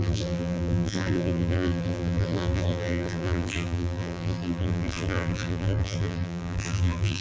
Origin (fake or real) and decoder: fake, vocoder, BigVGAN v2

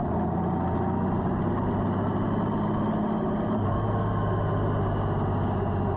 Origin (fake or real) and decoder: real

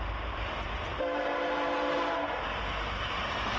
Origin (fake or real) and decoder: fake, vocoder, BigVGAN v2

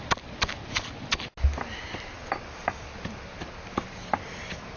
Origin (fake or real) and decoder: real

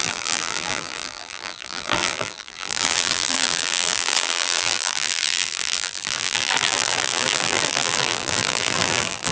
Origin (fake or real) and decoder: fake, vocoder, BigVGAN v2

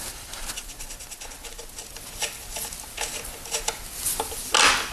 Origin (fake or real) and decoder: real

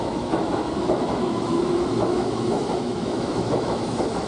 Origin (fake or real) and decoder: fake, autoencoder, DAC-VAE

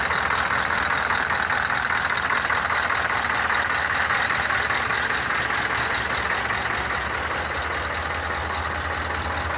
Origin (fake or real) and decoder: real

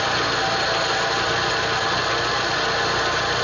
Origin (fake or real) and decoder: real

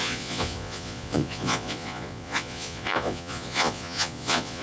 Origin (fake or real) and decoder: fake, vocoder, Vocos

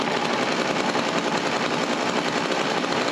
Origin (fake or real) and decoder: real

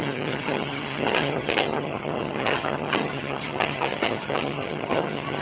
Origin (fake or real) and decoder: fake, vocoder, HiFi-GAN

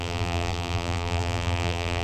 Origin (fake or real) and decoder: fake, vocoder, BigVGAN v2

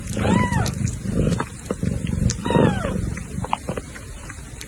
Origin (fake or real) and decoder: fake, vocoder, BigVGAN v2